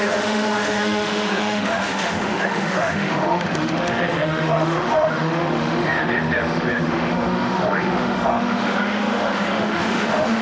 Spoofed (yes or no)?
yes